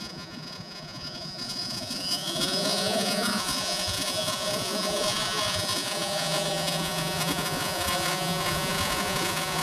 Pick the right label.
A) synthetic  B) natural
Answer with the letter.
A